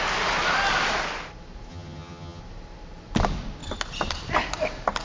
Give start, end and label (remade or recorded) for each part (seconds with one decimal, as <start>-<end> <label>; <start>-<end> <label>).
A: 0.0-1.7 recorded; 1.7-2.4 remade; 2.4-5.0 recorded